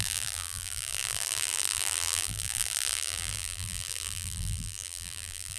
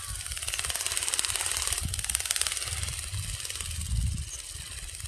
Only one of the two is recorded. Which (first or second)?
second